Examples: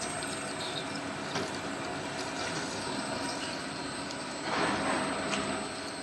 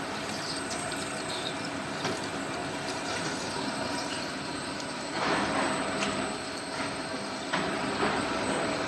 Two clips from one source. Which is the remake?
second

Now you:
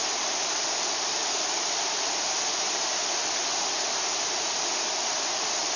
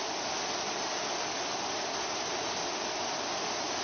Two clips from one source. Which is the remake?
first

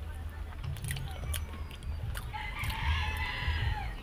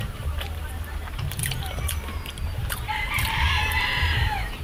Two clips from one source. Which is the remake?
second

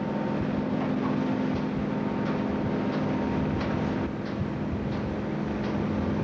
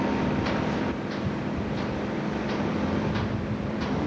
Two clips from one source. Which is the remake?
second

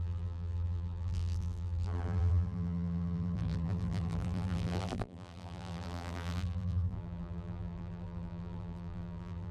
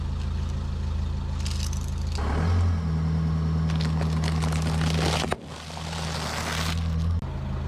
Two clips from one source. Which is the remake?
first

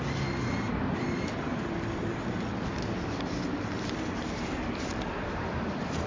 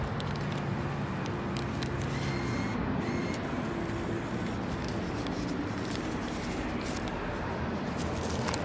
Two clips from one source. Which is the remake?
first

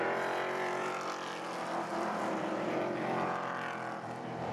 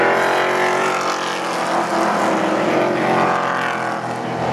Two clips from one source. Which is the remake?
first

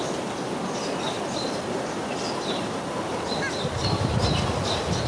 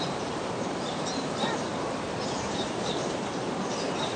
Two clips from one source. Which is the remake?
second